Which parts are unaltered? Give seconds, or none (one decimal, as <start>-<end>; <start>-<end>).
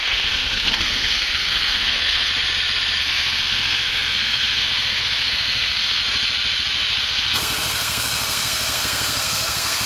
2.3-3.0; 6.0-7.0